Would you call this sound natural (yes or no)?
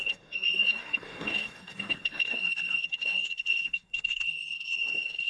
no